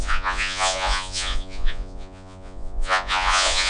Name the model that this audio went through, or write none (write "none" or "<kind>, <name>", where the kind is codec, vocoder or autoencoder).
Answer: vocoder, Vocos